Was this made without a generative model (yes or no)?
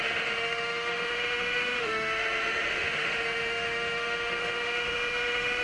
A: no